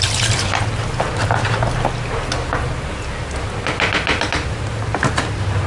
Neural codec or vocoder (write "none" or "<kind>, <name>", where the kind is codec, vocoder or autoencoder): none